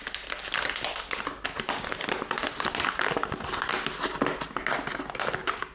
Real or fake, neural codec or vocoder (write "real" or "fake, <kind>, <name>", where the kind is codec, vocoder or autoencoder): real